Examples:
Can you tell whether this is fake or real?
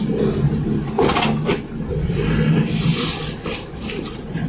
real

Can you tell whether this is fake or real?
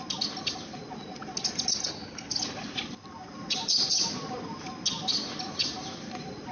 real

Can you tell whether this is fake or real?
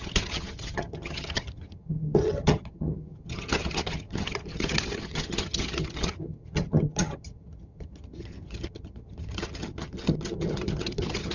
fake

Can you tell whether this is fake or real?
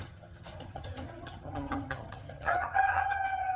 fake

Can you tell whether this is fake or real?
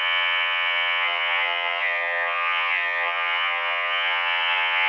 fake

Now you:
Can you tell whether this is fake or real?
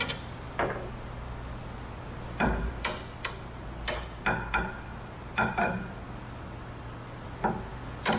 real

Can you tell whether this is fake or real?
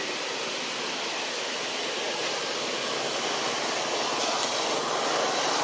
real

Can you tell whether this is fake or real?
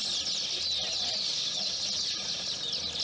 real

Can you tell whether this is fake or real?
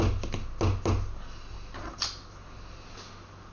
real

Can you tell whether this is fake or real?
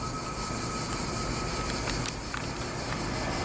real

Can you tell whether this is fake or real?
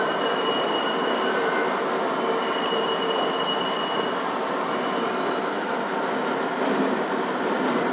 real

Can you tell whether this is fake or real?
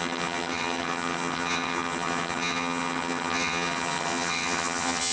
fake